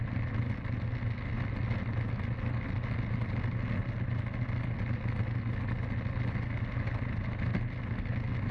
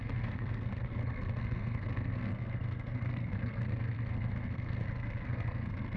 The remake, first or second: second